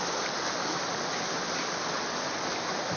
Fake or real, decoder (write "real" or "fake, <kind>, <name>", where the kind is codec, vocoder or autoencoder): real